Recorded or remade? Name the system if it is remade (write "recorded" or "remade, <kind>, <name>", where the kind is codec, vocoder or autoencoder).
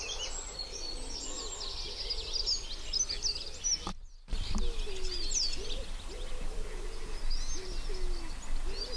recorded